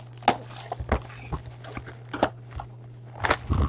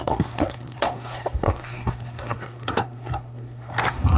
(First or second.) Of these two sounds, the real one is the first